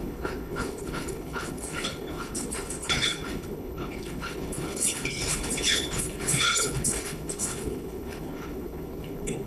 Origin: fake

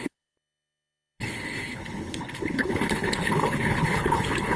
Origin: fake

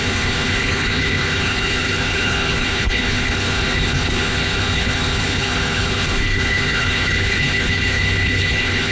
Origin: fake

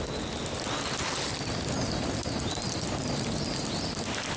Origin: real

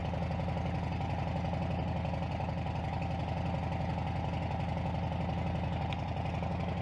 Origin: real